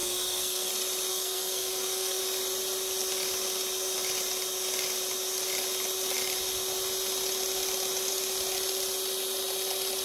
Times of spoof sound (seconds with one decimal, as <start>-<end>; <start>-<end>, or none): 0.0-0.7; 1.1-2.2